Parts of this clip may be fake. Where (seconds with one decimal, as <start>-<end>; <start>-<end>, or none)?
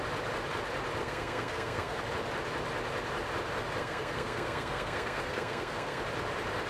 1.0-2.0; 3.8-6.0